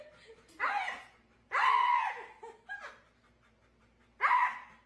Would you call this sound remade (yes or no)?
no